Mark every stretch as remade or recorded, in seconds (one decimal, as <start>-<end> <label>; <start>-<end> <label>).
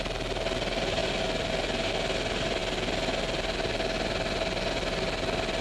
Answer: 0.0-5.6 recorded